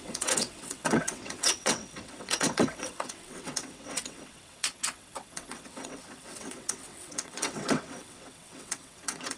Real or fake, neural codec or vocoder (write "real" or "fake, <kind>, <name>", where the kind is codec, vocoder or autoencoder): fake, vocoder, WaveNeXt